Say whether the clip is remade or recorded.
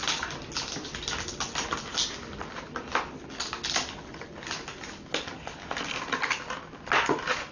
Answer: recorded